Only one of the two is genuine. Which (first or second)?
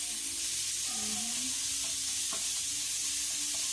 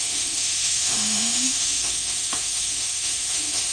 first